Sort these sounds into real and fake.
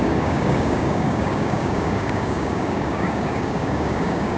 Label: fake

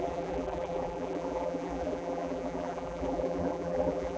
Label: fake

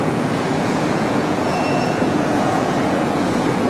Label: fake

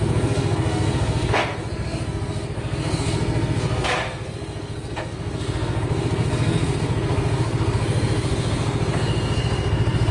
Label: fake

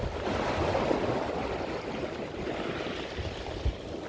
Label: real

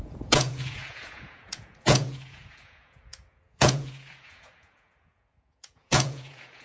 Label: fake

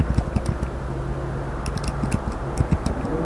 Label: real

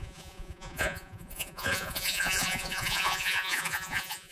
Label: fake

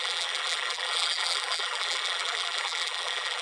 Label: fake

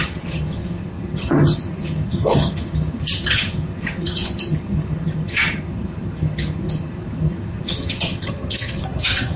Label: fake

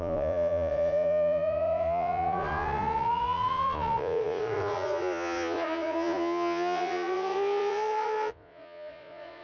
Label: fake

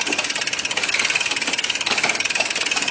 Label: fake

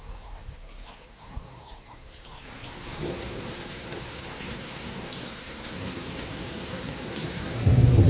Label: fake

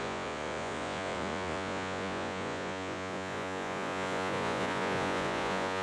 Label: fake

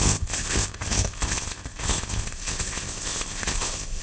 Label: fake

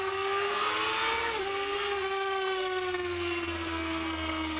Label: fake